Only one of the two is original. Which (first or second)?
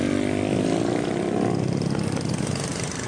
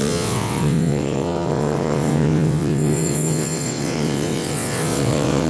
first